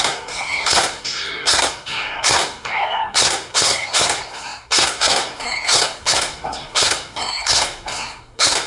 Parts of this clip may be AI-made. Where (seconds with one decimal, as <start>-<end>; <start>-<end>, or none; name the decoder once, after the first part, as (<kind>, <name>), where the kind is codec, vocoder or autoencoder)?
0.0-8.7 (codec, SNAC)